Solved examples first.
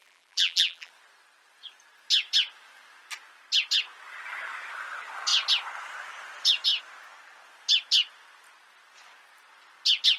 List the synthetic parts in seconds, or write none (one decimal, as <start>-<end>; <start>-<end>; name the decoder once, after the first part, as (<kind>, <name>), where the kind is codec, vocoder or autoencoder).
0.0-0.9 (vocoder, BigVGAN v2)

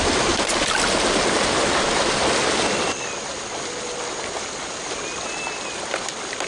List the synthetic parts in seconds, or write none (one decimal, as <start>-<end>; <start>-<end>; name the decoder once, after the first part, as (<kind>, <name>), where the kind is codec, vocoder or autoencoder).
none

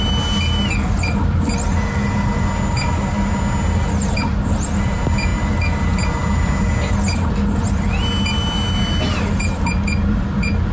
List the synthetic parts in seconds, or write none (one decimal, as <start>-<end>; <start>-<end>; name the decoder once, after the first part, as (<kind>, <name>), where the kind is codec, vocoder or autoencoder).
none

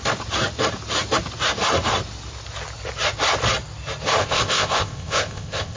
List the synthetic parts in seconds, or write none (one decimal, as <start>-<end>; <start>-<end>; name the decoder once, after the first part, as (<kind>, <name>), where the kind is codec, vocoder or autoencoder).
4.2-5.8 (codec, ZipCodec)

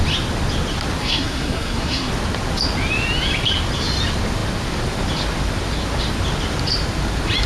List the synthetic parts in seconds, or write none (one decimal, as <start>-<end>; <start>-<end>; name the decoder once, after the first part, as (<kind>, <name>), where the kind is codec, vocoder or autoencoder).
1.0-2.1 (codec, SNAC)

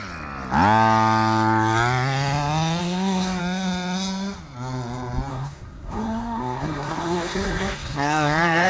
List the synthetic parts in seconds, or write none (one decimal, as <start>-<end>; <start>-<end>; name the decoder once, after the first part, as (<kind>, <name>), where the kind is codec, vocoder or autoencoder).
2.8-3.4 (codec, SNAC); 5.3-8.7

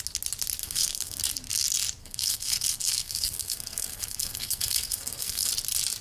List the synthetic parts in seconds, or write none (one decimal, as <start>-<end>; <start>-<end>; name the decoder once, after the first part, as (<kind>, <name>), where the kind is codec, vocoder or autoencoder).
0.6-1.2 (codec, SNAC); 2.0-5.5